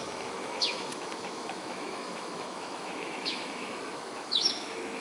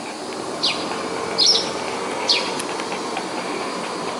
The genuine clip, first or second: second